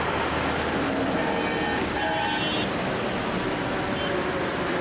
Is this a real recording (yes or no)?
yes